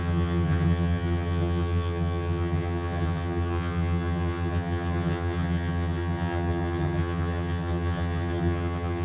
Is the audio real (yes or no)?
no